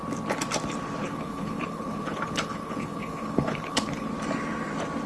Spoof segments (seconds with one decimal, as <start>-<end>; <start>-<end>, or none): 1.0-4.1